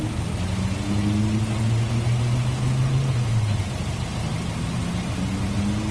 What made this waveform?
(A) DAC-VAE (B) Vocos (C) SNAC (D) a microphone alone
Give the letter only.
D